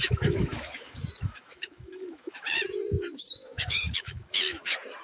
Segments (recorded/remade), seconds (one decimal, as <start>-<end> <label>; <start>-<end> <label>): 0.0-5.0 remade